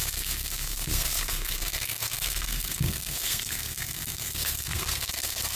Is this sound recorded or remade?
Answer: remade